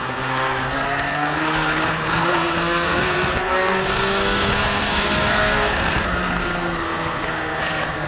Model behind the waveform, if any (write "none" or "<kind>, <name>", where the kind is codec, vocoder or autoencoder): codec, SNAC